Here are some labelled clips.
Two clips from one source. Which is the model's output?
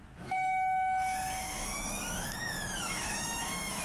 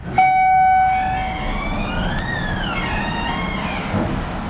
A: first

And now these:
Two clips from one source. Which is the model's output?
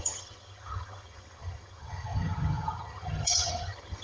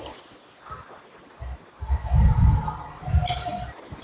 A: first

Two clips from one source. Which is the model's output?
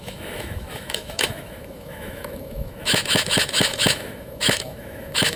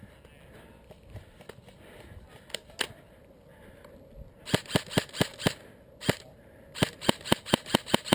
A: first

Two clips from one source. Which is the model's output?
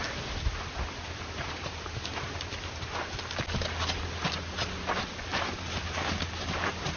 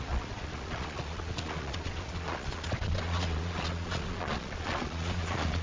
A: second